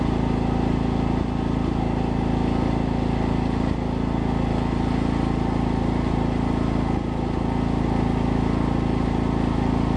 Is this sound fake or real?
real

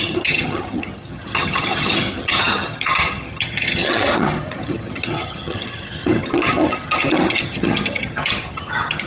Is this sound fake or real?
fake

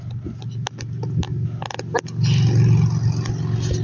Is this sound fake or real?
real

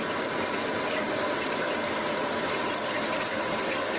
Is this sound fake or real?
real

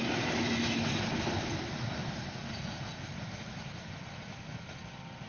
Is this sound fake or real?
real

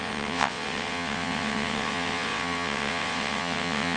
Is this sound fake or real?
fake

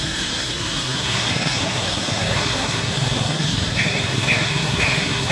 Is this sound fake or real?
fake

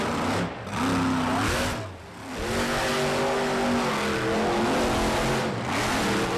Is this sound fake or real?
real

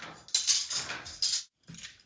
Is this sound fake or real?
real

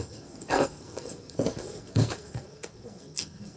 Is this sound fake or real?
fake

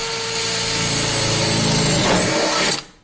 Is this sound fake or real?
real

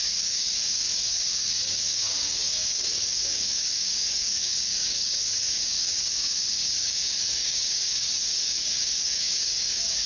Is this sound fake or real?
fake